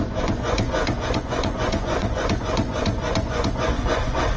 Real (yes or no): no